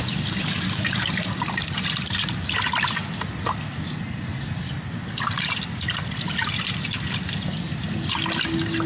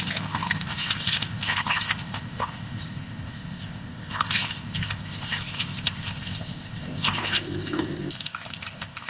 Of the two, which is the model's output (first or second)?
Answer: second